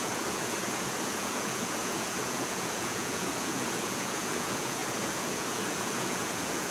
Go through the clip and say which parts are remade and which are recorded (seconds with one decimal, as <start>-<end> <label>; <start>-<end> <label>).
0.0-6.7 remade